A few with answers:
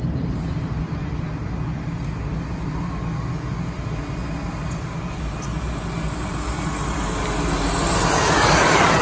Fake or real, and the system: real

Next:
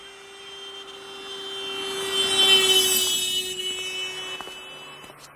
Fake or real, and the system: real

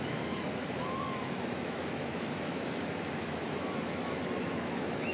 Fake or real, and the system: fake, autoencoder, DAC-VAE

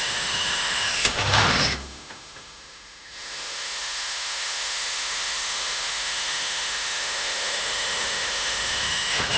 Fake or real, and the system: fake, autoencoder, DAC-VAE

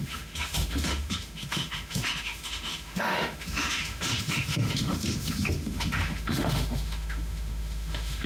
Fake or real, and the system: fake, autoencoder, DAC-VAE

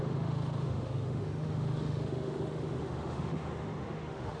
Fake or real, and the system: fake, autoencoder, DAC-VAE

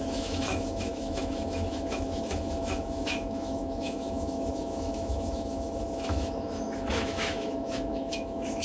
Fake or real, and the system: fake, autoencoder, DAC-VAE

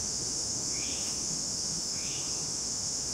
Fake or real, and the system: fake, autoencoder, DAC-VAE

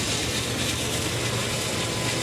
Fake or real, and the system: real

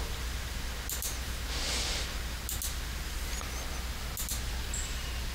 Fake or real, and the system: real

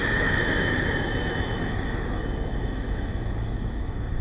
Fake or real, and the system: fake, autoencoder, DAC-VAE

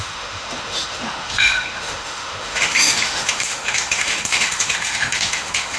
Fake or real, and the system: fake, autoencoder, DAC-VAE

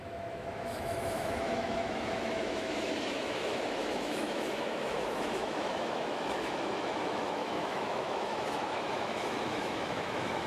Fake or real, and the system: fake, autoencoder, DAC-VAE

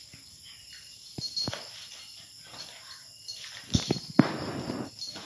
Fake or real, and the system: real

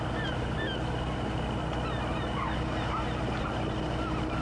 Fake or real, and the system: real